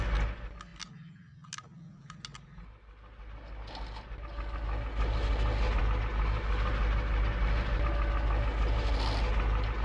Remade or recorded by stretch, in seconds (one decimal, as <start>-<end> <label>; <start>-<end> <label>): 0.0-9.8 recorded